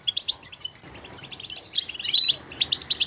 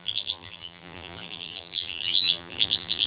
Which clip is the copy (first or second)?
second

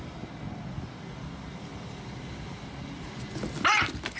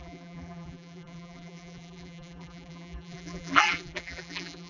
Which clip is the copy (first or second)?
second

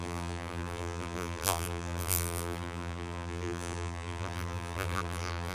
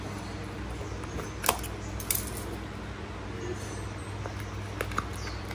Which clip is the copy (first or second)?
first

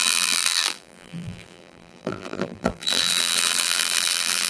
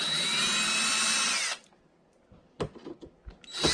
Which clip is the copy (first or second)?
first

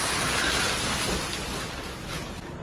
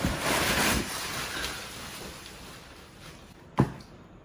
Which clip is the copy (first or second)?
second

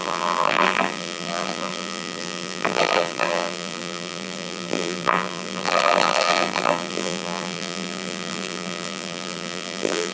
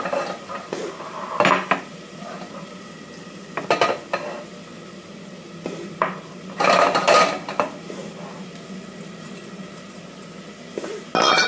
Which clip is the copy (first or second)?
first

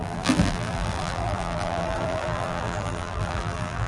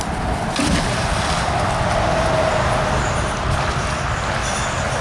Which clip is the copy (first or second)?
first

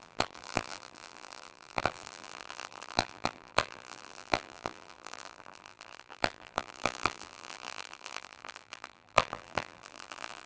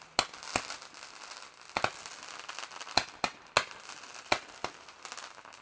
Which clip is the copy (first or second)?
first